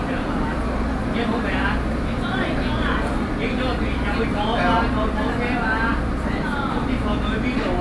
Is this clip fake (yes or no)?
no